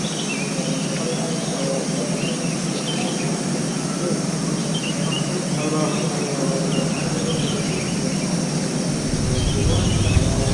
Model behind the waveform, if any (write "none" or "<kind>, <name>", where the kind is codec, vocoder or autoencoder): none